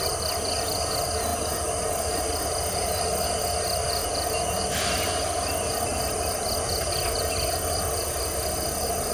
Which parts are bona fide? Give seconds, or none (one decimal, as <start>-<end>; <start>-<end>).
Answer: 0.0-9.1